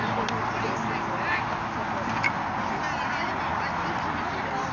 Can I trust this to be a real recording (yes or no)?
yes